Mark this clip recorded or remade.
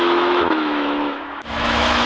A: remade